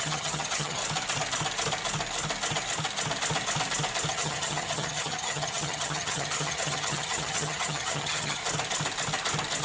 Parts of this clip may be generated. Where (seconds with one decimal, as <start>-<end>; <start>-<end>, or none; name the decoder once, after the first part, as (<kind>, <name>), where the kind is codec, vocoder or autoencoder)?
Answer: 0.0-0.8 (vocoder, HiFi-GAN); 4.1-8.4